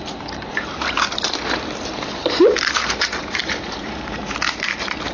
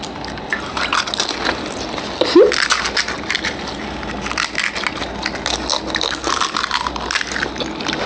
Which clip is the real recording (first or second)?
second